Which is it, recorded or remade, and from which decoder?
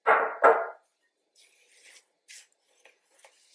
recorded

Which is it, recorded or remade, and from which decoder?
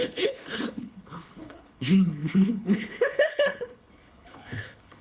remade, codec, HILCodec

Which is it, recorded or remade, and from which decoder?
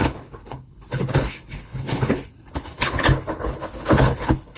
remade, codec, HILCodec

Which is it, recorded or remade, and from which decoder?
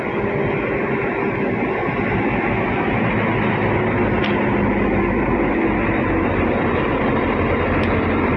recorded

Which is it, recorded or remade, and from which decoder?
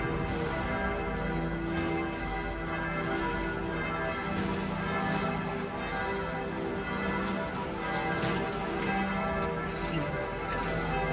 recorded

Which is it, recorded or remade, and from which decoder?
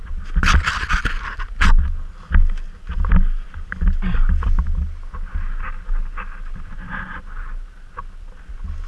recorded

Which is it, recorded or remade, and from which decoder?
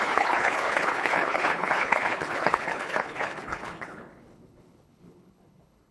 remade, codec, HILCodec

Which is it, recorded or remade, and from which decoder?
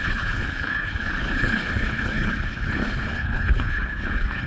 remade, codec, HILCodec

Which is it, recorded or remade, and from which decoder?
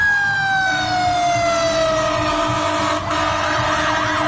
recorded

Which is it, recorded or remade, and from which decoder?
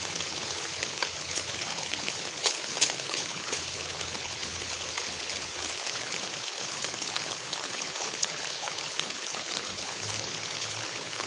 remade, codec, HILCodec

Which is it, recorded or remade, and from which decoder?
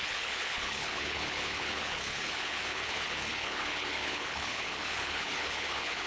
remade, codec, HILCodec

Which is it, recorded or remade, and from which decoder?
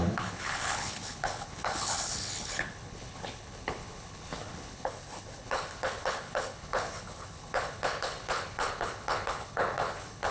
remade, codec, HILCodec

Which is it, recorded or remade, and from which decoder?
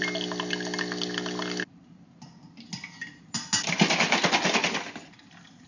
recorded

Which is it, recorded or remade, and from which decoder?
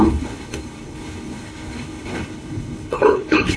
remade, codec, HILCodec